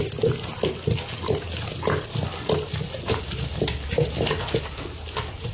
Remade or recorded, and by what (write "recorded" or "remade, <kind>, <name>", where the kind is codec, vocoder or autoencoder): recorded